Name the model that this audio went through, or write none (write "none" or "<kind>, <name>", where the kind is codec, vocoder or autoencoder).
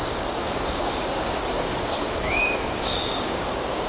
codec, DAC